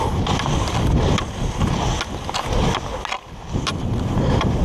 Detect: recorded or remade recorded